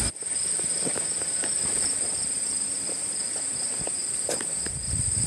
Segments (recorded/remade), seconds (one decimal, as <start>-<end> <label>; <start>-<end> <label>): 0.0-5.3 recorded